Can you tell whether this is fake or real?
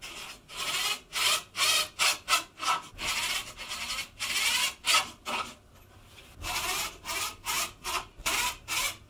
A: real